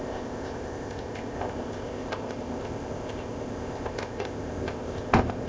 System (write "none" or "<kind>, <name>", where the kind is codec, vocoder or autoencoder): codec, ZipCodec